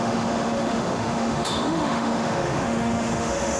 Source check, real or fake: fake